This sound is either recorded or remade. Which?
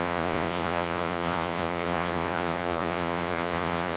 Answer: remade